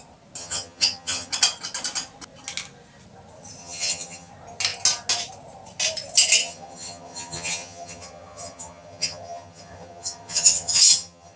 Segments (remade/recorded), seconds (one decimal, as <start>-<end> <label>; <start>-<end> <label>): 0.0-0.4 recorded; 0.4-1.3 remade; 1.3-3.6 recorded; 3.6-4.3 remade; 4.3-6.4 recorded; 6.4-11.4 remade